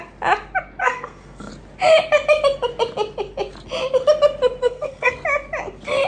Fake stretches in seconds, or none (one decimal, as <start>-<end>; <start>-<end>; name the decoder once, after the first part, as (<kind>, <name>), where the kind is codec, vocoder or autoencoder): 0.8-1.5 (codec, SNAC); 4.6-5.1